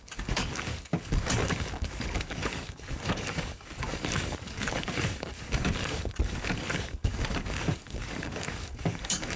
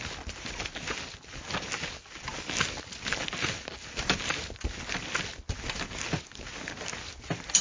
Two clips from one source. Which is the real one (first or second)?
second